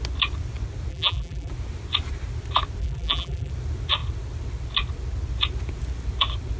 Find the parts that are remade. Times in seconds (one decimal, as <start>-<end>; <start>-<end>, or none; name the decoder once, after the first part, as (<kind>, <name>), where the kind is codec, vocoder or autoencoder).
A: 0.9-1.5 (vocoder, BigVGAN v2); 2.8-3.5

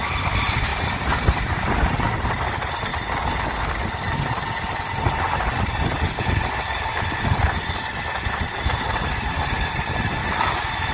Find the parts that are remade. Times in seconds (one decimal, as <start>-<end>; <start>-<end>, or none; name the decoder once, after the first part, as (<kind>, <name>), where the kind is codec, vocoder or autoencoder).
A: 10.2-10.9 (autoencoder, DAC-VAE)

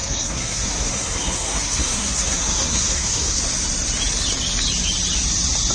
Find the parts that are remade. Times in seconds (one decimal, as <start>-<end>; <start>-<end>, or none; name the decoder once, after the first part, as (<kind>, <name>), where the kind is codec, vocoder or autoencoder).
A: 0.0-3.4 (codec, SNAC)

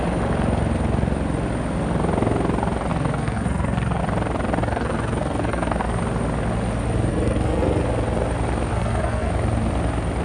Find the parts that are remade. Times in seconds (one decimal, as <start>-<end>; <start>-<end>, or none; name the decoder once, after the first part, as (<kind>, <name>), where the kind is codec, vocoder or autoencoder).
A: 2.9-4.0 (codec, SNAC); 4.6-6.0; 7.1-7.8; 8.7-9.3

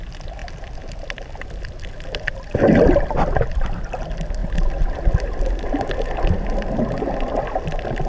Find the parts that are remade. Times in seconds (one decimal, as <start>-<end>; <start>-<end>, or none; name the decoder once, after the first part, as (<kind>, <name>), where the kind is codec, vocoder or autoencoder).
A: none